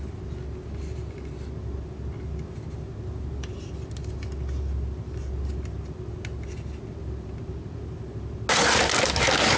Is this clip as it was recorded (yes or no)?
yes